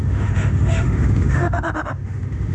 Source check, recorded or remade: remade